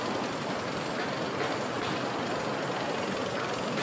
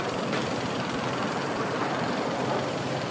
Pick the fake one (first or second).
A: second